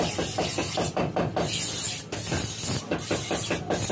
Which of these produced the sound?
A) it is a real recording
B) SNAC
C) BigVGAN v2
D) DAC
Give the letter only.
A